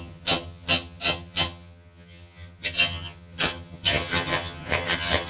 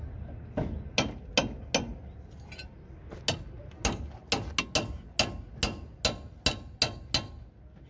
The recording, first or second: second